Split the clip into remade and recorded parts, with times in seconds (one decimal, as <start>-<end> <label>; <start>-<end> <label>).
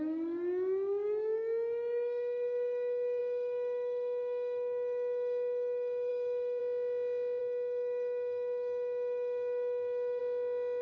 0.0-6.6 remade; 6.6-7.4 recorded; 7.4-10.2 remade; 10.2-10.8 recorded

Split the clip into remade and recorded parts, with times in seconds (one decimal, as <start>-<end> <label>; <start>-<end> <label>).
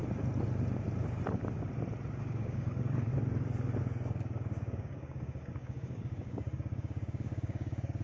0.0-2.2 recorded; 2.2-3.1 remade; 3.1-3.8 recorded; 3.8-8.0 remade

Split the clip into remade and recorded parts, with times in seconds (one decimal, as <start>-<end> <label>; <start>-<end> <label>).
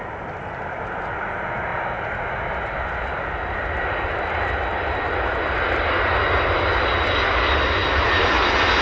0.0-8.8 recorded